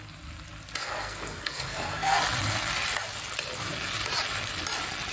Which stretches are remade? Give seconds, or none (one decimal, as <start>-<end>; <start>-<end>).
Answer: 0.8-2.2